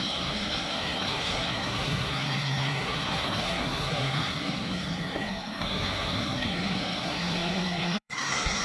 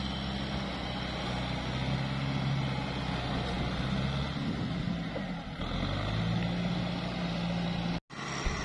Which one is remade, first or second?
first